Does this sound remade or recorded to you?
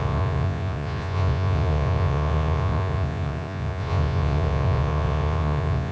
remade